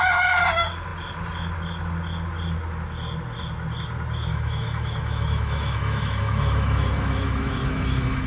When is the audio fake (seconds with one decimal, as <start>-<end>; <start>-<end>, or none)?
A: 4.3-8.3